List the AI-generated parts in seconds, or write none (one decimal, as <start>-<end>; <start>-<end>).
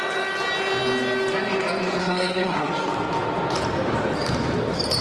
2.0-2.7